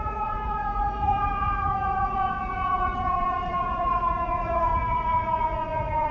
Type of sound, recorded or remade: remade